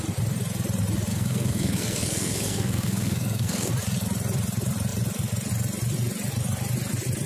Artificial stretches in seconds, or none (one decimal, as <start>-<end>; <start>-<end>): 1.1-3.7